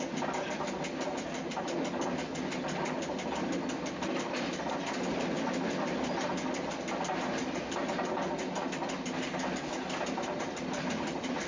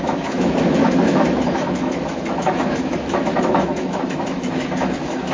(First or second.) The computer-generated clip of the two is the second